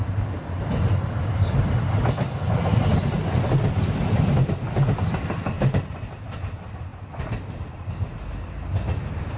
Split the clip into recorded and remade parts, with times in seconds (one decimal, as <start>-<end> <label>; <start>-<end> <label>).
0.0-9.4 recorded